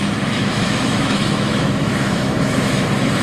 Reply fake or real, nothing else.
fake